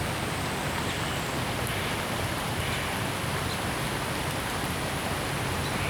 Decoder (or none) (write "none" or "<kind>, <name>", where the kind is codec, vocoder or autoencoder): none